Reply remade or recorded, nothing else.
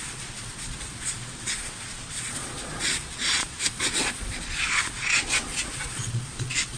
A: remade